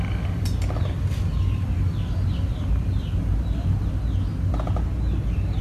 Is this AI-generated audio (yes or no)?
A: no